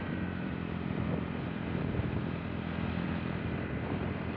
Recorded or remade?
remade